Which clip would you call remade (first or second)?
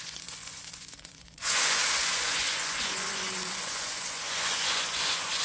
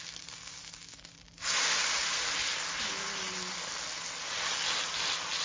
first